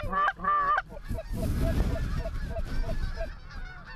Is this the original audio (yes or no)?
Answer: yes